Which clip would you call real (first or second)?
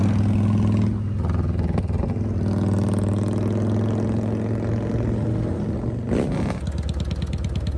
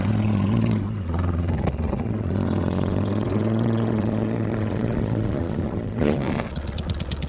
first